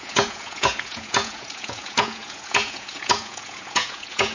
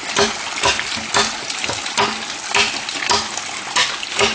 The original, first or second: second